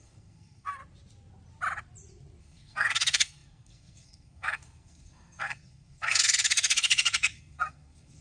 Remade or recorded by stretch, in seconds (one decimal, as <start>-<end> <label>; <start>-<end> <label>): 0.0-0.8 remade; 0.8-2.4 recorded; 2.4-8.2 remade